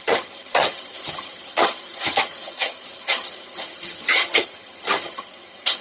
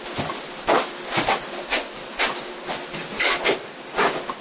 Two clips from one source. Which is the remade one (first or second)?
first